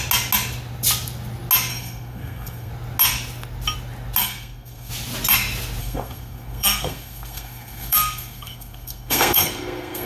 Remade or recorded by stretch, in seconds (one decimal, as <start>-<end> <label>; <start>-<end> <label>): 0.0-1.7 recorded; 1.7-2.7 remade; 2.7-4.2 recorded; 4.2-4.9 remade; 4.9-5.8 recorded; 5.8-10.1 remade

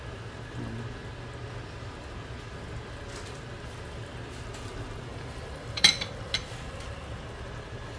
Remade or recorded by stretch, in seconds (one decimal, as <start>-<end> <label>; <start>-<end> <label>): 0.0-5.1 recorded; 5.1-5.8 remade; 5.8-8.0 recorded

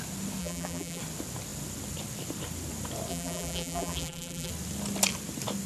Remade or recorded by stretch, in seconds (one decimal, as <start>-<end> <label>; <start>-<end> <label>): 0.0-0.4 recorded; 0.4-1.0 remade; 1.0-3.1 recorded; 3.1-4.5 remade; 4.5-5.7 recorded

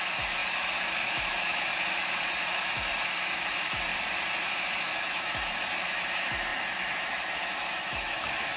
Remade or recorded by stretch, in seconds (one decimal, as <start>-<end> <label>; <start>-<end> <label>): 0.0-3.9 remade; 3.9-4.5 recorded; 4.5-8.6 remade